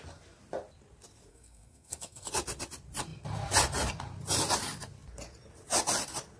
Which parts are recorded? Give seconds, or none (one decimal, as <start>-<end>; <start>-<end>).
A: 0.0-1.3; 2.3-6.4